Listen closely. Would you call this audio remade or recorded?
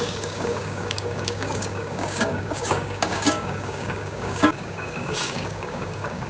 remade